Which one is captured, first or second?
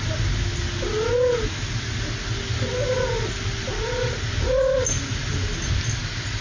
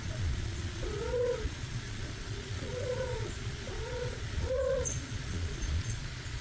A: first